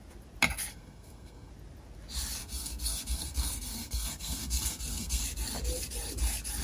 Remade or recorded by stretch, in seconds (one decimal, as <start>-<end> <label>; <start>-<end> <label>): 0.0-0.7 recorded; 0.7-1.5 remade; 1.5-2.4 recorded; 2.4-5.2 remade; 5.2-6.6 recorded